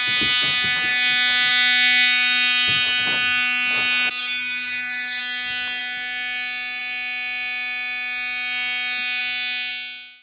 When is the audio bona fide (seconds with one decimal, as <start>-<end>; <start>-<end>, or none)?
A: 0.0-4.2; 5.2-10.2